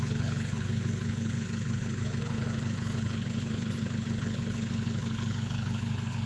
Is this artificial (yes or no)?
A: yes